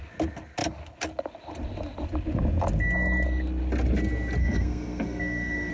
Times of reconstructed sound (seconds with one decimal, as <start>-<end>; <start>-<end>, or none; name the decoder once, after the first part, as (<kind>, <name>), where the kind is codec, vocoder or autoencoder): 4.4-5.7 (codec, SNAC)